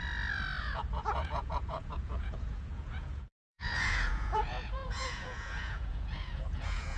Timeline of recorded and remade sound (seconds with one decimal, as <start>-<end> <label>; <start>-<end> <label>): 0.0-0.6 recorded; 0.6-7.0 remade